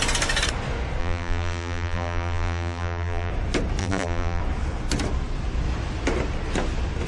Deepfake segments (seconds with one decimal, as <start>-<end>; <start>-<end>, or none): 1.0-3.3; 3.8-4.4